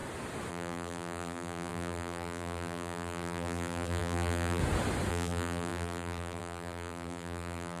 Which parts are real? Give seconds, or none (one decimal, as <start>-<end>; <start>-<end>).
0.0-0.5; 4.6-5.1